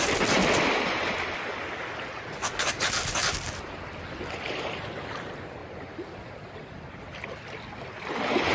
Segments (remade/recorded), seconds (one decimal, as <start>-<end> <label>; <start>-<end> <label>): 0.0-5.6 recorded; 5.6-7.0 remade; 7.0-8.5 recorded